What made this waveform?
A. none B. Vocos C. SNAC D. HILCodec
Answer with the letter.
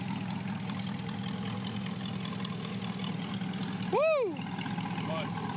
A